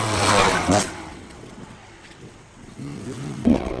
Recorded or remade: remade